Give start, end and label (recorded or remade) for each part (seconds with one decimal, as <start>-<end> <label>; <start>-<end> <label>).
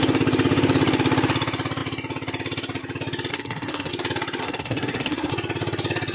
0.0-3.3 recorded; 3.3-3.9 remade; 3.9-4.4 recorded; 4.4-5.3 remade; 5.3-6.1 recorded